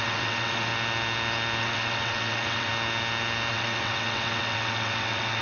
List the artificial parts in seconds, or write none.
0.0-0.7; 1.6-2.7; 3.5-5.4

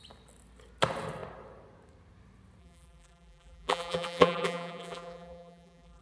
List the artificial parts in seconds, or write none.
2.6-6.0